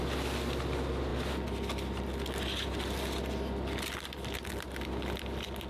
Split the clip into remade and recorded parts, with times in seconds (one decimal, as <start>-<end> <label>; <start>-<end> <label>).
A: 0.0-5.7 recorded

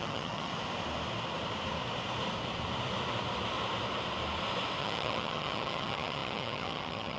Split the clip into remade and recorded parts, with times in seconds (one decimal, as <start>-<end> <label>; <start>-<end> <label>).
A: 0.0-0.5 remade; 0.5-4.8 recorded; 4.8-7.2 remade